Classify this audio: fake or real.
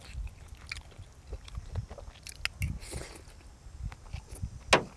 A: real